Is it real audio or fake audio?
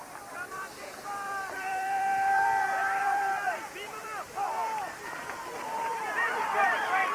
fake